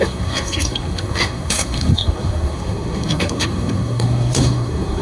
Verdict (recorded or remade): remade